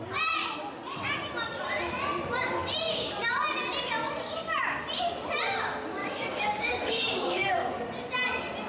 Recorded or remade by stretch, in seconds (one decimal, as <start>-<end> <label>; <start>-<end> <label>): 0.0-6.0 recorded; 6.0-7.8 remade; 7.8-8.7 recorded